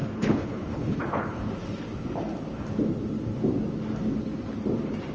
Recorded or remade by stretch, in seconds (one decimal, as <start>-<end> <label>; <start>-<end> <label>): 0.0-1.4 remade; 1.4-5.1 recorded